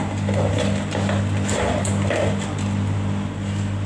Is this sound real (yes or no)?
yes